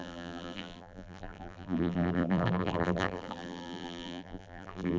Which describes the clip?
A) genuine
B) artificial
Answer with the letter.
B